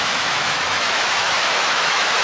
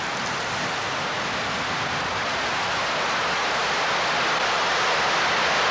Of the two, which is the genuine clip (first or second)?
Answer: second